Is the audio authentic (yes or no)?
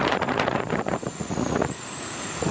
no